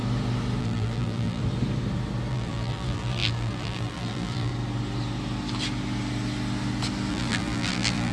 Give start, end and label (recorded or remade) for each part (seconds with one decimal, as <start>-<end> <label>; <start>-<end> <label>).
0.0-0.6 recorded; 0.6-1.4 remade; 1.4-2.3 recorded; 2.3-4.5 remade; 4.5-7.1 recorded; 7.1-8.1 remade